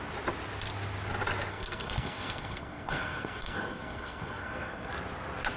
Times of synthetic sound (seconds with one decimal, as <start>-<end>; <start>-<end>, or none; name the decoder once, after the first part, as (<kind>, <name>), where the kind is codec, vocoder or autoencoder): 1.5-4.9 (codec, SNAC)